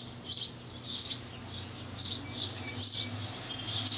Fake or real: real